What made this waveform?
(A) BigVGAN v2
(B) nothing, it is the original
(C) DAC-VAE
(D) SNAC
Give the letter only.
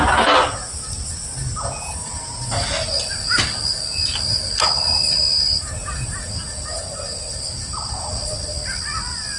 B